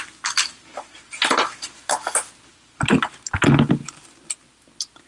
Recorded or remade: recorded